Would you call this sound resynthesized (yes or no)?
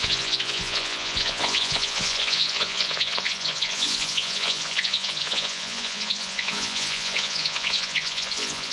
yes